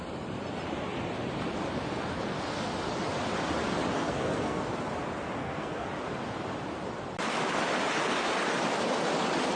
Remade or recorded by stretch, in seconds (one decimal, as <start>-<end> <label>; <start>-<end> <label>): 0.0-3.9 recorded; 3.9-4.6 remade; 4.6-5.4 recorded; 5.4-5.9 remade; 5.9-9.6 recorded